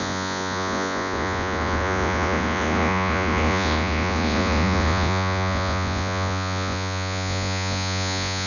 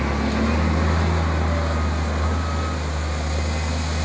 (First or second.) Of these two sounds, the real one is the second